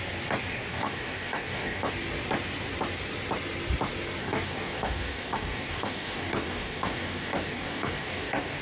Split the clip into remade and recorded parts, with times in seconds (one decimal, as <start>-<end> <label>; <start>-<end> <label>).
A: 0.0-0.5 recorded; 0.5-1.9 remade; 1.9-4.2 recorded; 4.2-8.6 remade